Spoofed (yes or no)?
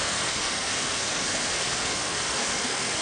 yes